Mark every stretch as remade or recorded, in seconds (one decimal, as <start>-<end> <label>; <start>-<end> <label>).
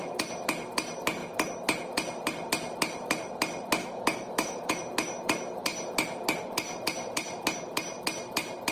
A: 0.0-3.8 recorded; 3.8-4.8 remade; 4.8-8.7 recorded